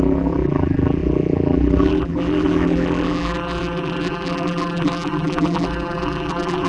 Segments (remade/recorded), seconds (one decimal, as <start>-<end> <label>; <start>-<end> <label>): 0.0-6.7 remade